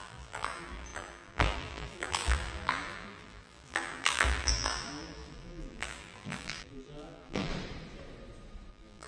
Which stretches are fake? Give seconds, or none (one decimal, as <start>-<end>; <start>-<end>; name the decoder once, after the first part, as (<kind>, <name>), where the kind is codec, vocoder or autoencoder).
0.0-7.5 (vocoder, BigVGAN v2); 8.7-9.1